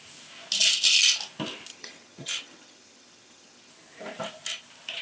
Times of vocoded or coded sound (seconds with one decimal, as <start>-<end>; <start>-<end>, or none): 1.7-3.7

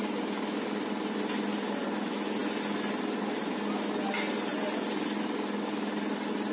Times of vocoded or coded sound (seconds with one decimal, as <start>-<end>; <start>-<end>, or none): 4.5-5.2

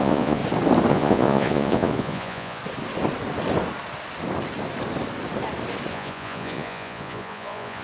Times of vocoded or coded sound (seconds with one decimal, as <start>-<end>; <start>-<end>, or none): 0.0-0.4; 0.9-2.6; 5.9-7.8

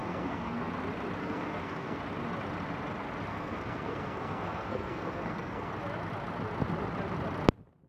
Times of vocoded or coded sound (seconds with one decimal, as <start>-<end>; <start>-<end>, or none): 0.0-0.7; 1.2-2.0; 3.3-5.7

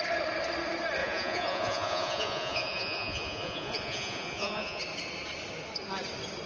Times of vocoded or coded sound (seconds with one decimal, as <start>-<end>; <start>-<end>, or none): 1.0-4.8

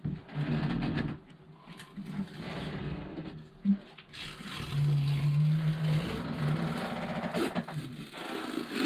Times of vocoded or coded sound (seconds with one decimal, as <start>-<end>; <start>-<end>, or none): 0.5-1.1; 2.8-3.5

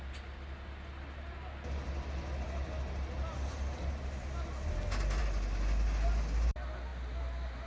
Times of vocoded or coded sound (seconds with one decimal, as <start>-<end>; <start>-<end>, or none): none

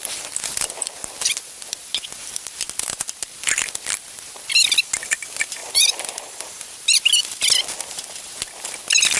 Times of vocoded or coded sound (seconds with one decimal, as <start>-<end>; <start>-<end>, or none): none